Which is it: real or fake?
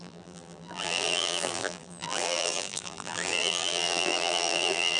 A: fake